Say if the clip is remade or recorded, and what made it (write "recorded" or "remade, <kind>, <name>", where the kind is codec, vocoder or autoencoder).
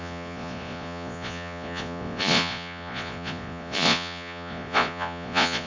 remade, vocoder, Vocos